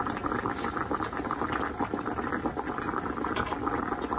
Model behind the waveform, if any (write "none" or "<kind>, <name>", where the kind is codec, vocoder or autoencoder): none